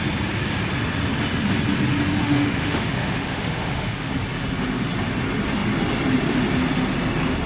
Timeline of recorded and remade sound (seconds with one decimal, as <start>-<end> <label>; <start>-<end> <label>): 0.0-2.2 recorded; 2.2-4.1 remade; 4.1-7.5 recorded

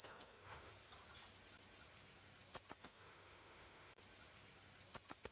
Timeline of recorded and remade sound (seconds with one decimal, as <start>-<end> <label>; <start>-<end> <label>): 0.0-0.7 remade; 0.7-2.8 recorded; 2.8-4.0 remade; 4.0-5.3 recorded